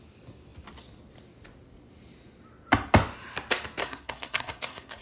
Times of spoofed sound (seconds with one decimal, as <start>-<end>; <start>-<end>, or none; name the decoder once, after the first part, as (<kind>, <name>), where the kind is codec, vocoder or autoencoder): 3.8-5.0 (codec, SNAC)